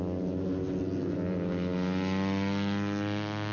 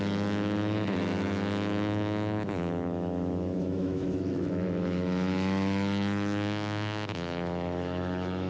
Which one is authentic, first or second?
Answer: first